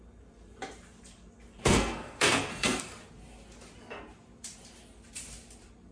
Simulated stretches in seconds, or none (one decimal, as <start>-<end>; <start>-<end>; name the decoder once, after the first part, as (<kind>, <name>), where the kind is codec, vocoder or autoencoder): 1.6-3.0 (codec, SNAC)